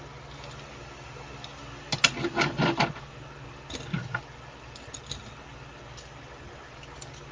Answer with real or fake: real